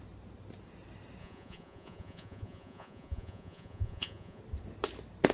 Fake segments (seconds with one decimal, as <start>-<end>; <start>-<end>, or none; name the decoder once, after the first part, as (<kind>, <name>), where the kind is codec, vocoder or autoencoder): 1.2-4.4 (vocoder, Vocos)